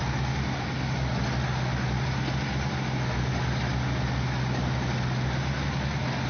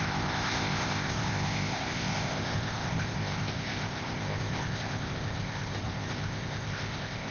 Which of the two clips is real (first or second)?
first